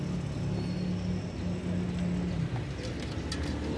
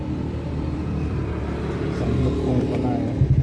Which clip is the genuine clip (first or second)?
first